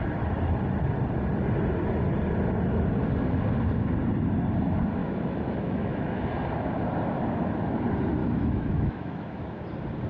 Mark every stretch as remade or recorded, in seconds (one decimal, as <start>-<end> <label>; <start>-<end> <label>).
0.0-5.0 recorded; 5.0-6.2 remade; 6.2-8.2 recorded; 8.2-9.6 remade; 9.6-10.1 recorded